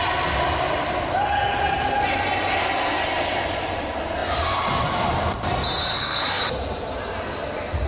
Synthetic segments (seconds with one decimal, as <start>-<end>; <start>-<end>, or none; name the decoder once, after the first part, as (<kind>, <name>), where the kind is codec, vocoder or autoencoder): 5.9-6.4 (codec, SNAC)